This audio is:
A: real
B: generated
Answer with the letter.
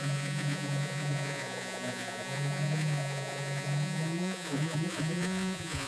B